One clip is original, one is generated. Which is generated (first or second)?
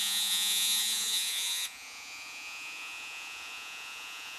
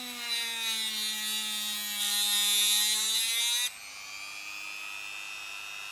first